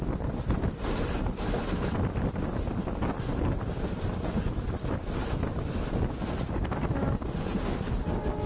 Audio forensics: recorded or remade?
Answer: recorded